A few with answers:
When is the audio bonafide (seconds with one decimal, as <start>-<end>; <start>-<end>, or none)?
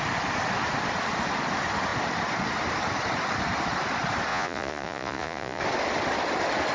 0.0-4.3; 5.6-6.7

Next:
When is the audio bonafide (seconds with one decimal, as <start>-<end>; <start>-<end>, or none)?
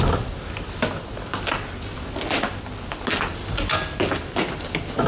0.0-5.1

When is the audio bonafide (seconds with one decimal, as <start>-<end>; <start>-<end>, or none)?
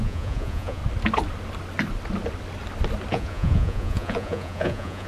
0.8-3.1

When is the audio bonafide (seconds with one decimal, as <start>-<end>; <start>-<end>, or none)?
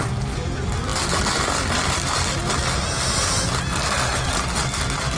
0.0-5.2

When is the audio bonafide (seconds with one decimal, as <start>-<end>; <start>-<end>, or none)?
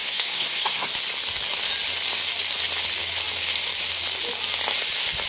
0.9-5.3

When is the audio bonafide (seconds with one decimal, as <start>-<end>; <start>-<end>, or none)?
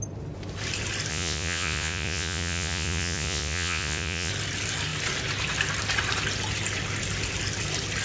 0.0-1.1; 4.3-8.0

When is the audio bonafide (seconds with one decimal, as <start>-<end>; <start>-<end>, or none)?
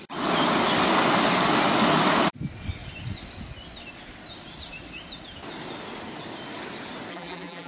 0.0-7.1